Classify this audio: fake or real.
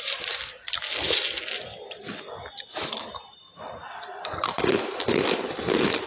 fake